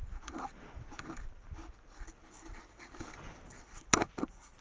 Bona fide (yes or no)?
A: yes